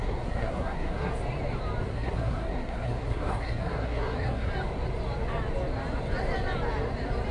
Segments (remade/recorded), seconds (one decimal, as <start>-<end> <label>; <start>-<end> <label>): 0.0-1.1 remade; 1.1-1.9 recorded; 1.9-4.5 remade; 4.5-7.3 recorded

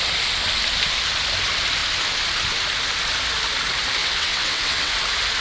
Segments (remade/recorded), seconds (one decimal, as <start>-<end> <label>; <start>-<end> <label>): 0.0-4.0 recorded; 4.0-4.9 remade; 4.9-5.4 recorded

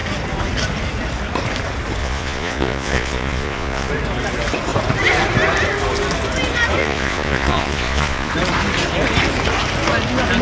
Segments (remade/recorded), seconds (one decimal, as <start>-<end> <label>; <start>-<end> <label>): 0.0-2.0 recorded; 2.0-3.9 remade; 3.9-6.8 recorded; 6.8-8.3 remade; 8.3-10.4 recorded

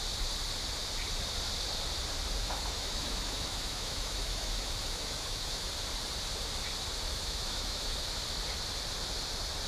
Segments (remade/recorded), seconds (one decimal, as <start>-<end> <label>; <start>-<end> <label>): 0.0-2.4 recorded; 2.4-5.7 remade; 5.7-7.1 recorded; 7.1-8.1 remade; 8.1-9.7 recorded